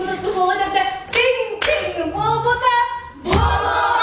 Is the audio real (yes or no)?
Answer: yes